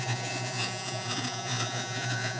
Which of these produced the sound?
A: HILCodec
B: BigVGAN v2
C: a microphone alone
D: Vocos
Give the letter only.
D